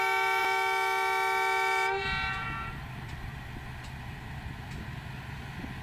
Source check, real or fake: real